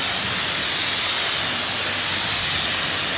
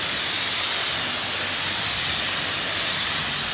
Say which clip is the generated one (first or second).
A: second